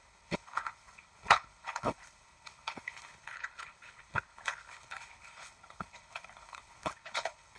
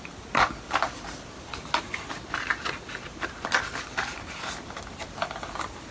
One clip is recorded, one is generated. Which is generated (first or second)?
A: first